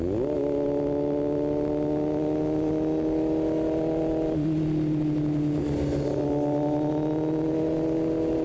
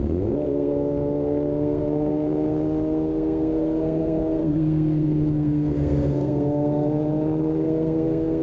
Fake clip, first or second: second